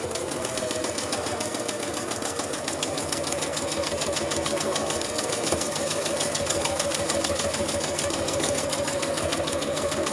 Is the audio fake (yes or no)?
yes